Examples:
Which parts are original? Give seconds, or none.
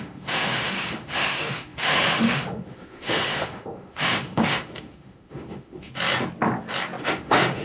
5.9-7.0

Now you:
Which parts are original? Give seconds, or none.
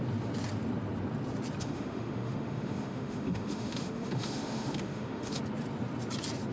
0.0-1.6; 5.4-6.5